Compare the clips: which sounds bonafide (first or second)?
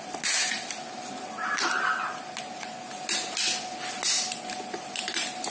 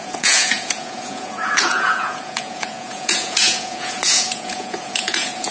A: first